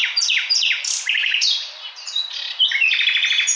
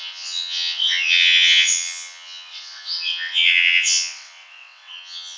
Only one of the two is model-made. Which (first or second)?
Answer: second